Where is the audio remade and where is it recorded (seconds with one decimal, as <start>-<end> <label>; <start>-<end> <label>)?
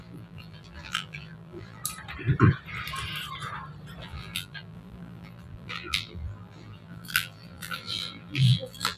0.0-1.8 remade; 1.8-4.0 recorded; 4.0-9.0 remade